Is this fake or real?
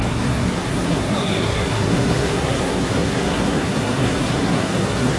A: fake